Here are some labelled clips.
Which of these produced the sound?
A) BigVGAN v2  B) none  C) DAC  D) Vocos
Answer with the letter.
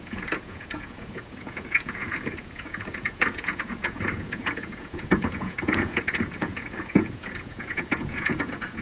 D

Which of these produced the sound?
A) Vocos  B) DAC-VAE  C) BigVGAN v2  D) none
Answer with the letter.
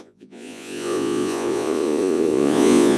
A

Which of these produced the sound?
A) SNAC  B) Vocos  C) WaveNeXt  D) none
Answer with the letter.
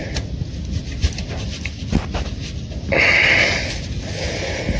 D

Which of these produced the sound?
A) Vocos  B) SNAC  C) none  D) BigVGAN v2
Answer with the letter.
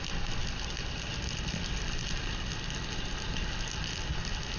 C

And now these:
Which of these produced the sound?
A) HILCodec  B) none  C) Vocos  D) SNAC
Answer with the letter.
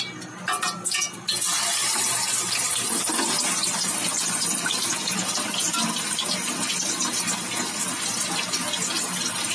B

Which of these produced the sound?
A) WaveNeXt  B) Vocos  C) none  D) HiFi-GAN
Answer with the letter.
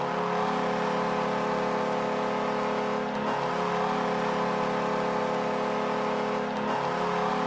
C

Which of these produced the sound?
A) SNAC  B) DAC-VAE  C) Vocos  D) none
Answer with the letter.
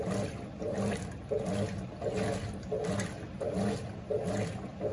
D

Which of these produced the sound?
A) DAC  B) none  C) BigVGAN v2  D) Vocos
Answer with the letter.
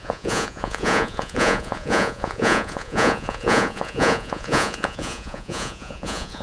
D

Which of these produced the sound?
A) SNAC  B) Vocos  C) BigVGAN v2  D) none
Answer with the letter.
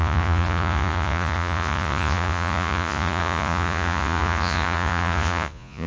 B